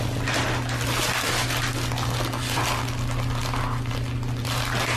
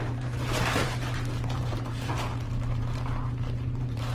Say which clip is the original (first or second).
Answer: first